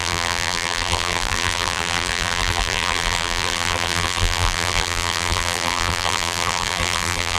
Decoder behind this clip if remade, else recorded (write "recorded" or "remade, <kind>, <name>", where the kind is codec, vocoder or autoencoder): remade, vocoder, BigVGAN v2